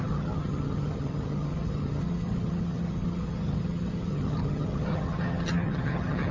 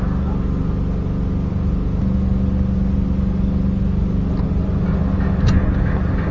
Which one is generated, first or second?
first